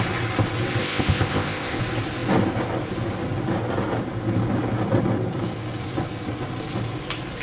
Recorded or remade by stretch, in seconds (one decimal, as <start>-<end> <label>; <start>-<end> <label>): 0.0-0.8 recorded; 0.8-1.8 remade; 1.8-7.4 recorded